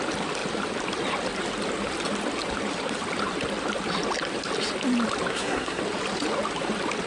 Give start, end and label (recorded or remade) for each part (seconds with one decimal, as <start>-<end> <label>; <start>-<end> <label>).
0.0-5.3 recorded; 5.3-5.8 remade; 5.8-7.1 recorded